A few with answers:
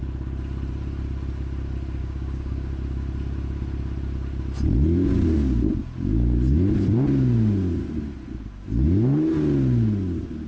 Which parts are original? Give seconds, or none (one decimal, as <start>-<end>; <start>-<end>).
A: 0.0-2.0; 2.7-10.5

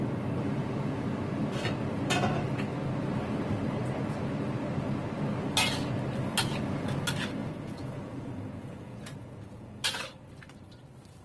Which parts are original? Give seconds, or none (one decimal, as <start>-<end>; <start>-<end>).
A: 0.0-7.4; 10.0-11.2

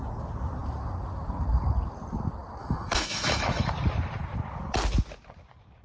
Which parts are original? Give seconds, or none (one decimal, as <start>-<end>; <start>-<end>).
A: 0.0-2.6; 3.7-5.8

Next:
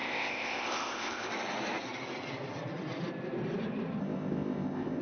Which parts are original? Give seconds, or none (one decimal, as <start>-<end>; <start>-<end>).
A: 1.3-4.0